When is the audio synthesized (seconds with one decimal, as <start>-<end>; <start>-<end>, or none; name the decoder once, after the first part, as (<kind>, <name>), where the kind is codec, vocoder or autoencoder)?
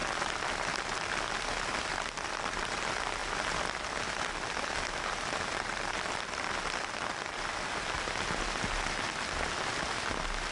none